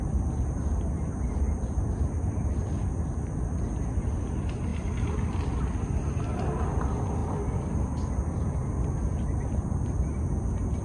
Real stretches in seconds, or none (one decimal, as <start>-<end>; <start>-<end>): 0.0-10.8